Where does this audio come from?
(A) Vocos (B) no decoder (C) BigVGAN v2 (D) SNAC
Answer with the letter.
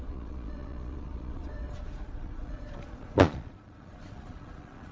A